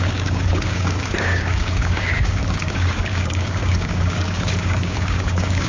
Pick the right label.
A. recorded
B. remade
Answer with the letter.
B